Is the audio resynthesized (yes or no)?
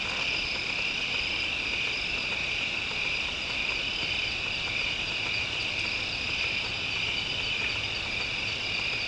no